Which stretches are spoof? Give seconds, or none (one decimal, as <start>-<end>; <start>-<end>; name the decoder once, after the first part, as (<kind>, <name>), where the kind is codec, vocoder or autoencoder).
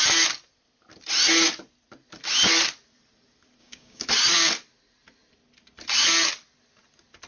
3.6-4.1 (codec, DAC)